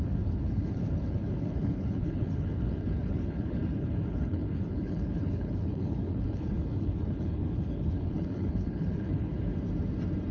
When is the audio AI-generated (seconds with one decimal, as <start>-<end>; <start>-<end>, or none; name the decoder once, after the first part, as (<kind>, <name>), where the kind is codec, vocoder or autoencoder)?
0.0-9.3 (codec, HILCodec)

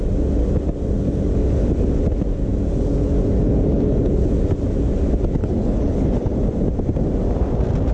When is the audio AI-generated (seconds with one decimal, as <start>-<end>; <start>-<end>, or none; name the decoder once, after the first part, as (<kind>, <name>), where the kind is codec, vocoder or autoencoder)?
5.4-6.3 (codec, HILCodec)

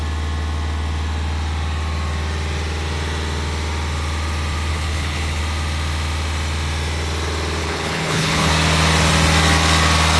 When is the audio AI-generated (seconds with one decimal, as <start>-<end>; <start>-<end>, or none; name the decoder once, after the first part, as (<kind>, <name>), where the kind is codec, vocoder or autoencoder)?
4.7-5.4 (codec, HILCodec); 7.6-8.5

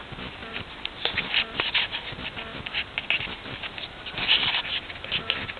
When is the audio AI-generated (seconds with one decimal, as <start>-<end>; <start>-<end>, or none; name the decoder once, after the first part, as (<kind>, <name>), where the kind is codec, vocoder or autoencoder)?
none